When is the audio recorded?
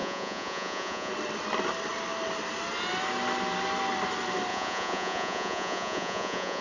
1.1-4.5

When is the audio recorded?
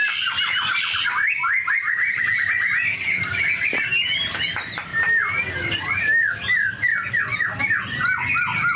0.0-8.8